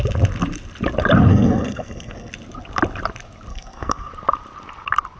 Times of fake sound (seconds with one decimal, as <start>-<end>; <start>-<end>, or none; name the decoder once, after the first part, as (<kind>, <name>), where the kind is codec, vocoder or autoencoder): 1.3-2.3 (codec, SNAC); 3.5-4.1